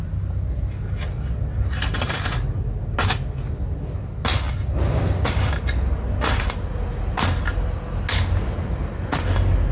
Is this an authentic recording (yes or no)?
yes